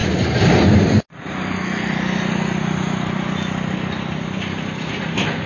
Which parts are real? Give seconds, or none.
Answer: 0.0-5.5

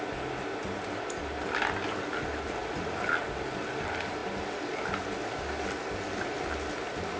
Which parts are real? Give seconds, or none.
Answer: 0.0-7.2

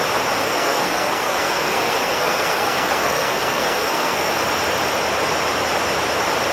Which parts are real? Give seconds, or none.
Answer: 0.0-0.4; 4.3-6.5

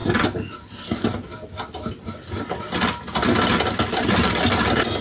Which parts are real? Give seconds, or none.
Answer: 0.0-5.0